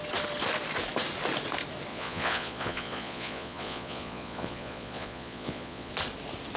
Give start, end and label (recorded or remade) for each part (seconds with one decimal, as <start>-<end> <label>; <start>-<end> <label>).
0.0-1.9 recorded; 1.9-5.9 remade; 5.9-6.6 recorded